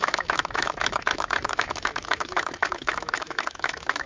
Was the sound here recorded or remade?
remade